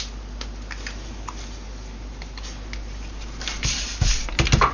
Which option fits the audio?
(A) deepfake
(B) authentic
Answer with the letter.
B